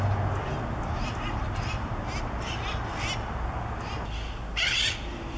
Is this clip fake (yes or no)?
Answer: no